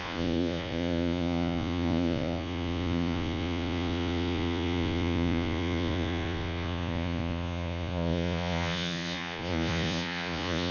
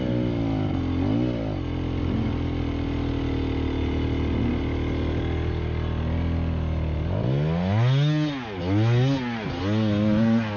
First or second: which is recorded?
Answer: second